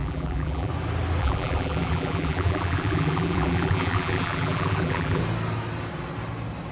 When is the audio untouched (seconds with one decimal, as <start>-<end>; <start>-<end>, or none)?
0.7-1.2; 5.2-6.7